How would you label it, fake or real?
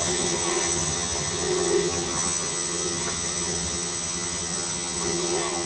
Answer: fake